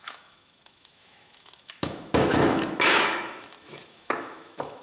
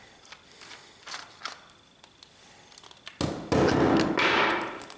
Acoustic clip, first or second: second